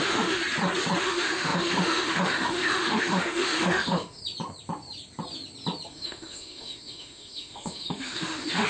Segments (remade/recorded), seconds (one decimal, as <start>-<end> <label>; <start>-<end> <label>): 0.0-0.4 remade; 0.4-1.0 recorded; 1.0-4.2 remade; 4.2-5.9 recorded; 5.9-8.7 remade